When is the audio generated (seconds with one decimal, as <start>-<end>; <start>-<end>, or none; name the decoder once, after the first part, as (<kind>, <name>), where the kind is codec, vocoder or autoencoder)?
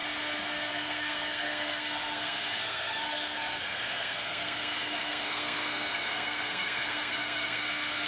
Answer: 0.7-8.1 (codec, SNAC)